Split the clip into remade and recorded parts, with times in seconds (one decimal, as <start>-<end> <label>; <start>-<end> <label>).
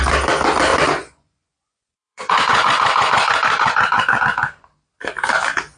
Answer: 0.0-0.7 recorded; 0.7-4.2 remade; 4.2-5.8 recorded